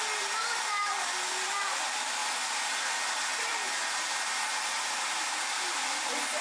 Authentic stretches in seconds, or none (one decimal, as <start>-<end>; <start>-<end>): 0.0-6.4

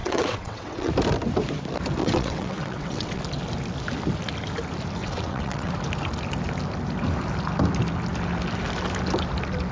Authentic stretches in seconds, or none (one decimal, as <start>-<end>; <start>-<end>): 0.9-2.0; 3.2-5.0; 5.7-9.7

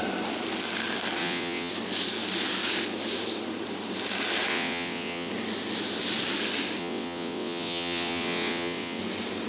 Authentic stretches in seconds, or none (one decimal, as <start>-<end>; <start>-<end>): 0.0-1.2; 1.7-4.5; 5.3-6.8; 9.0-9.5